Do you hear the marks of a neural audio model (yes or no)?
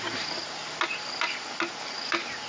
no